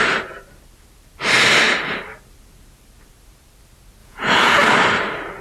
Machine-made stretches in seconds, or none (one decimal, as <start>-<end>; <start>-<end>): 4.0-4.6